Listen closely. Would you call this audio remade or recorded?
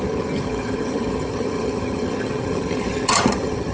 remade